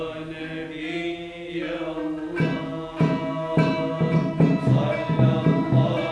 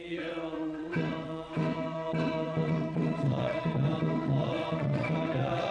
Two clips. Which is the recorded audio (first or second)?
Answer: first